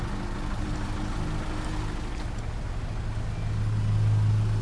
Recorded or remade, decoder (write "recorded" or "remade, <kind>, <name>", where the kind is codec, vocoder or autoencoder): recorded